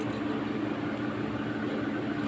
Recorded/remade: recorded